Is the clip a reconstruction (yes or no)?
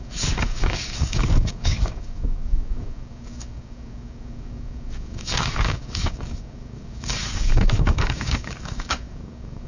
yes